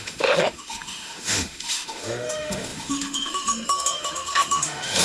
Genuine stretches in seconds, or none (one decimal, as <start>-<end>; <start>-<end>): none